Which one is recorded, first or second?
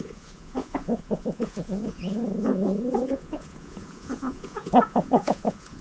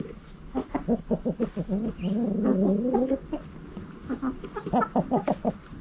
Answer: second